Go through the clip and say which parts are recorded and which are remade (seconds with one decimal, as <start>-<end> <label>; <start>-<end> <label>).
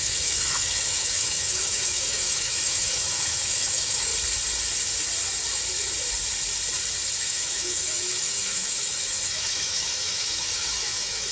0.0-4.1 remade; 4.1-7.2 recorded; 7.2-11.3 remade